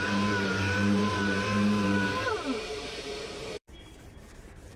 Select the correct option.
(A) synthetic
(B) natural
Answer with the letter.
A